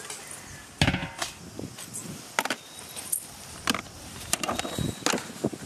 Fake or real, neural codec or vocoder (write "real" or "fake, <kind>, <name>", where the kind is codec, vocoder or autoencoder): real